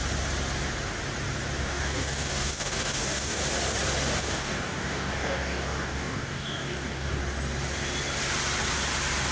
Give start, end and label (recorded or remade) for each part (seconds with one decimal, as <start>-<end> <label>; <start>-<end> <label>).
0.0-1.6 recorded; 1.6-3.4 remade; 3.4-4.2 recorded; 4.2-7.2 remade; 7.2-9.3 recorded